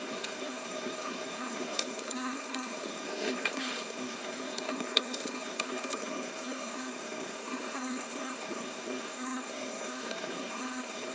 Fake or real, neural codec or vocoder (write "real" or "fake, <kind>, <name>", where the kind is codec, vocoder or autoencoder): fake, codec, SNAC